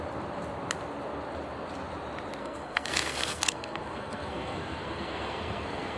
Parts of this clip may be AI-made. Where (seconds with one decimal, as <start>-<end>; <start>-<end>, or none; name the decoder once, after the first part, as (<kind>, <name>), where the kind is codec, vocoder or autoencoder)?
2.4-6.0 (codec, SNAC)